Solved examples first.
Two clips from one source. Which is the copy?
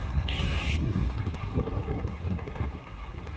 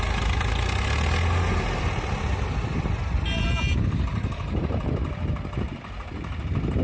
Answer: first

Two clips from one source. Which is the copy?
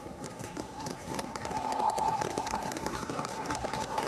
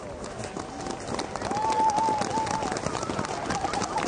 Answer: first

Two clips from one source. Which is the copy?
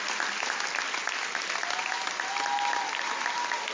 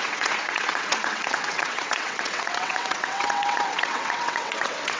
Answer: second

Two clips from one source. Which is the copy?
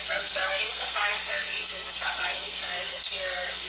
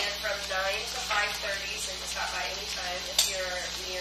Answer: first